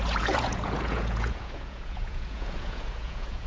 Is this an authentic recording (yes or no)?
no